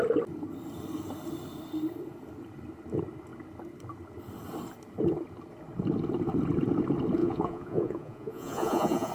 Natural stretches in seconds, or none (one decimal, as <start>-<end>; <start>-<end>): 0.0-7.2